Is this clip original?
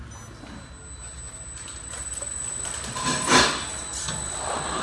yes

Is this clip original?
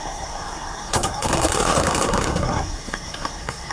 no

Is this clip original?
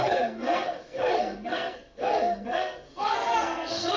no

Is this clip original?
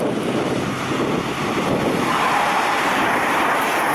yes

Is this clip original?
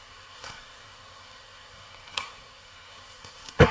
no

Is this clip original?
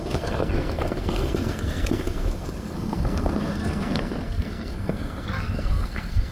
no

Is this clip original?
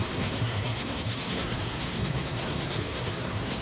no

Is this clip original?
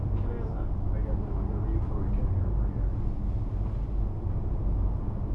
yes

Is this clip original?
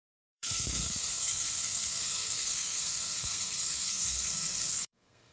no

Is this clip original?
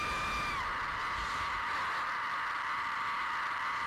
yes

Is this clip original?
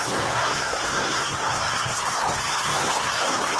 no